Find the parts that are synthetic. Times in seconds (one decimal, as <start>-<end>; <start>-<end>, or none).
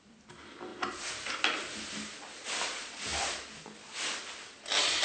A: none